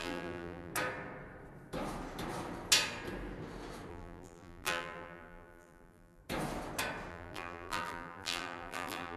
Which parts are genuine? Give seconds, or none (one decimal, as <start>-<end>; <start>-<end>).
0.7-3.9; 6.2-7.1